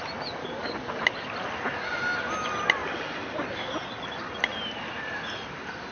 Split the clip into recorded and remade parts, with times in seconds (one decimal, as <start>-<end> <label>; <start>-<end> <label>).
0.0-0.4 recorded; 0.4-1.0 remade; 1.0-5.9 recorded